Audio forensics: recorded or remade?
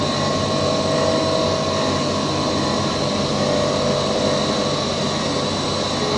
recorded